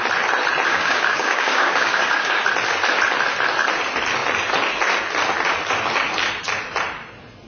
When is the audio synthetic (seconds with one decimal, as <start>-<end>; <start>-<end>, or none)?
0.7-2.4